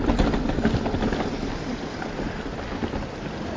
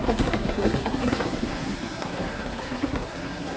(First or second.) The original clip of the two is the first